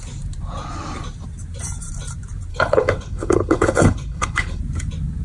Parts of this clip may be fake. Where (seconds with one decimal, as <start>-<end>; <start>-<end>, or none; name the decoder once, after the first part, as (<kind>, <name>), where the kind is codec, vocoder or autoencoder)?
2.5-4.6 (codec, HILCodec)